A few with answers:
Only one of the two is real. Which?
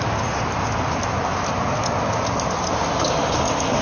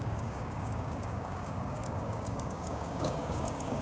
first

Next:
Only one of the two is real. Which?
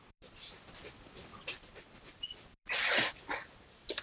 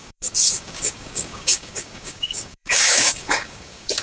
first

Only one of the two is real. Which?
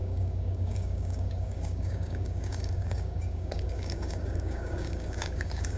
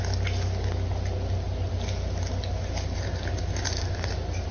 second